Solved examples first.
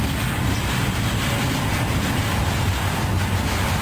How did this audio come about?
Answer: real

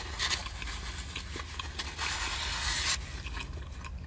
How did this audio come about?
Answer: real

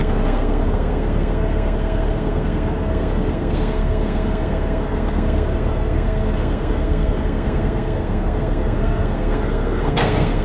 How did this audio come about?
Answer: fake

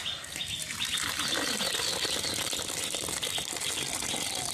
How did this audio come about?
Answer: real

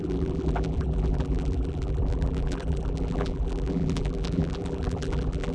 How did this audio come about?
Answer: fake